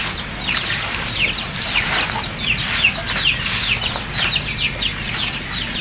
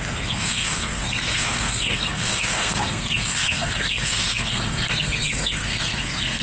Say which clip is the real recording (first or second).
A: first